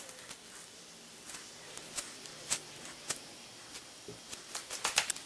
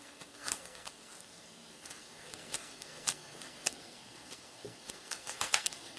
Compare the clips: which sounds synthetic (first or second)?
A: second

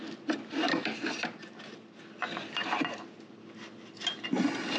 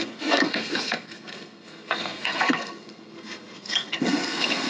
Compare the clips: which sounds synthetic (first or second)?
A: second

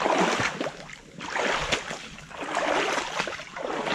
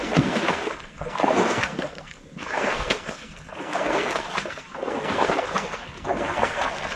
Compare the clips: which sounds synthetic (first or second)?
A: second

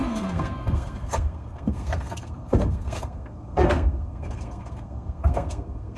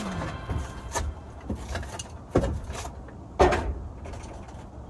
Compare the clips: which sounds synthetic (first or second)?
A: first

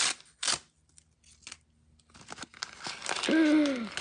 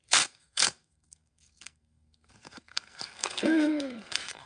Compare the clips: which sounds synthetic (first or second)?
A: second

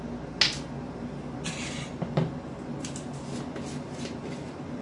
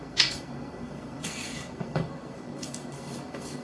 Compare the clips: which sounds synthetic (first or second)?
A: second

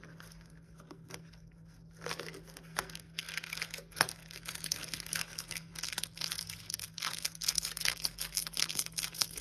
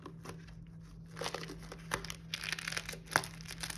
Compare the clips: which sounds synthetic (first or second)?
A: first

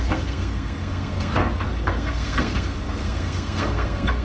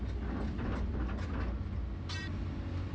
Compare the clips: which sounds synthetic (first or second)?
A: first